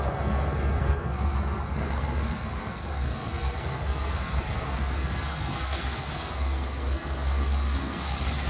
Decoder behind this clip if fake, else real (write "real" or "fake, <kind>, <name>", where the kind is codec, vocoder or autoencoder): fake, codec, SNAC